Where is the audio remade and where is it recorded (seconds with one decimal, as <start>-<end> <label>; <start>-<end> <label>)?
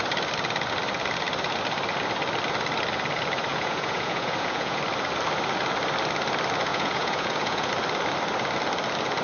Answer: 0.0-3.5 recorded; 3.5-4.8 remade; 4.8-6.7 recorded; 6.7-7.7 remade; 7.7-9.2 recorded